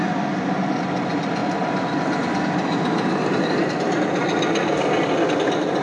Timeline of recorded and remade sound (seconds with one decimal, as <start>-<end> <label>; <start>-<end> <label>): 0.0-5.8 recorded